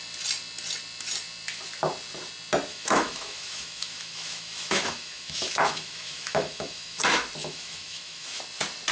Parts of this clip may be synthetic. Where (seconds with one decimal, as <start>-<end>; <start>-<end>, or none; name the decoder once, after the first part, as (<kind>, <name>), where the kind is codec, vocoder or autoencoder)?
2.7-7.0 (autoencoder, DAC-VAE); 7.4-8.4